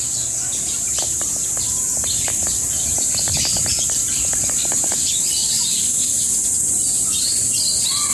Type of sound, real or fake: real